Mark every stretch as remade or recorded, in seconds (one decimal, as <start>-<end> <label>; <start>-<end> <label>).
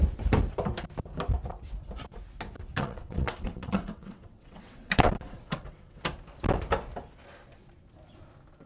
0.0-2.8 recorded; 2.8-6.0 remade; 6.0-8.7 recorded